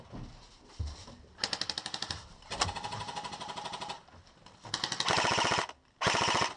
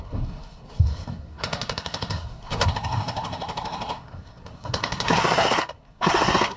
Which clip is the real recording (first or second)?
first